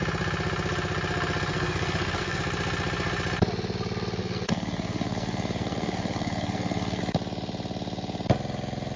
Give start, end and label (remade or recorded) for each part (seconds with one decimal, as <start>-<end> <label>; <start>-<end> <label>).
0.0-1.5 recorded; 1.5-2.4 remade; 2.4-4.2 recorded; 4.2-7.0 remade; 7.0-9.0 recorded